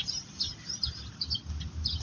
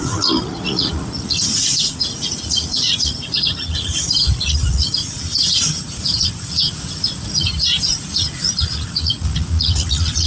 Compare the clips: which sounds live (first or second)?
first